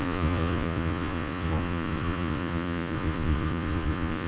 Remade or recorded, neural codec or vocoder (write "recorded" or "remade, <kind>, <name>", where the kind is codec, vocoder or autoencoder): remade, vocoder, Vocos